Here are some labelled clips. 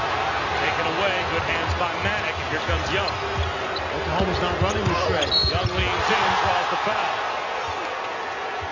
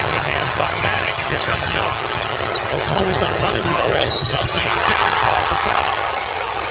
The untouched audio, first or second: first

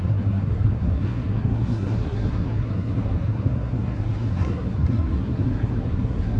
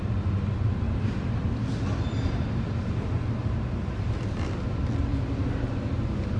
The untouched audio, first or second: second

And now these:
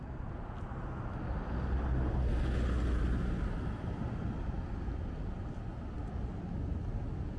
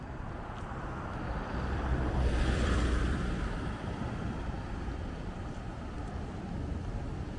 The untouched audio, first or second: first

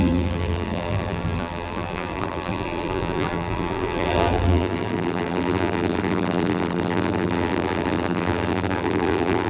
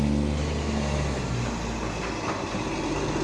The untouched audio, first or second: second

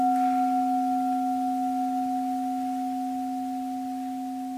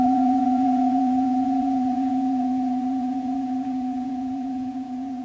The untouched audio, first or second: first